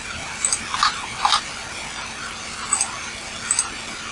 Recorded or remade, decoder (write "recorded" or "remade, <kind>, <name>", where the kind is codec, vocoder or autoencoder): recorded